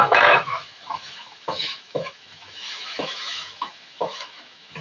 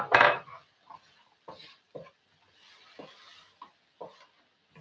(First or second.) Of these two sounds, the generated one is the first